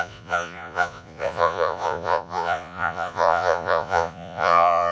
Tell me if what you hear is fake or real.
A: fake